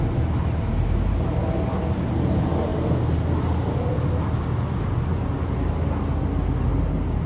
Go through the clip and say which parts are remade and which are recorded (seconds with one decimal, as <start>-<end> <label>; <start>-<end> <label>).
0.0-7.3 recorded